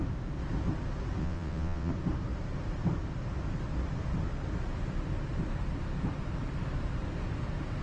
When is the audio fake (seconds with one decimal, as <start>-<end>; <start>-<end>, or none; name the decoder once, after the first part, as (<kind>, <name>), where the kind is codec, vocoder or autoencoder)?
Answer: 1.2-1.9 (vocoder, WaveNeXt)